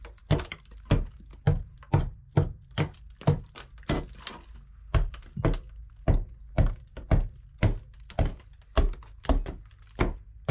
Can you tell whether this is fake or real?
real